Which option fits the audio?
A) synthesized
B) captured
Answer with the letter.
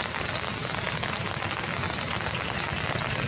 B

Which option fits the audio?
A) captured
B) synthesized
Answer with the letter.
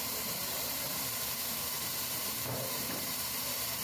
B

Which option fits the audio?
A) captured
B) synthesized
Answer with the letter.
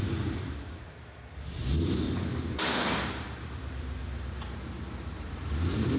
B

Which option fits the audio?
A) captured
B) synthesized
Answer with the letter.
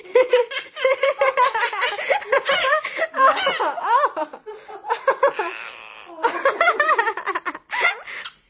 B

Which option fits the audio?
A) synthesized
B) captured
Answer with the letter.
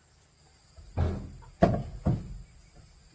B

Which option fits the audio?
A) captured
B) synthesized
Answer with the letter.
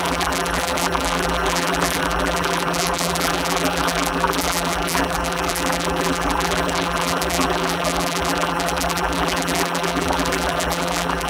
B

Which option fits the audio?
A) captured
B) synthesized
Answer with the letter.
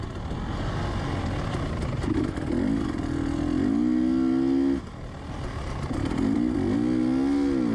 A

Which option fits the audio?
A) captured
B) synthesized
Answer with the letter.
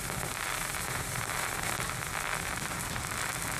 B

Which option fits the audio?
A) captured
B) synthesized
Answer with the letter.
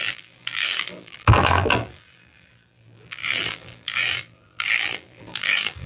B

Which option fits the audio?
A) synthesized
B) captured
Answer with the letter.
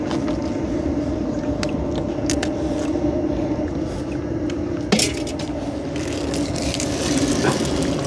B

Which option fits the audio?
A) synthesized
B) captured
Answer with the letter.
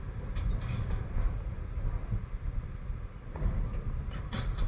B